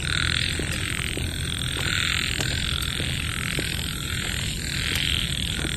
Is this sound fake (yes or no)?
no